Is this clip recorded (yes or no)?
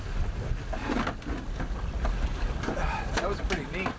yes